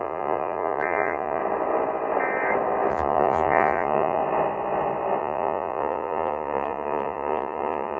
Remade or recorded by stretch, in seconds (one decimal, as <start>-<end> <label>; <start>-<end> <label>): 0.0-1.4 remade; 1.4-2.9 recorded; 2.9-4.2 remade; 4.2-5.2 recorded; 5.2-8.0 remade